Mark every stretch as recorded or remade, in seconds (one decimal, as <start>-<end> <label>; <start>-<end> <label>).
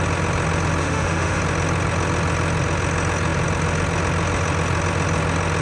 0.0-0.8 recorded; 0.8-1.4 remade; 1.4-5.6 recorded